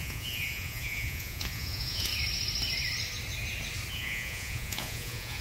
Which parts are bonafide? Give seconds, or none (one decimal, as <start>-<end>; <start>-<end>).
2.1-3.9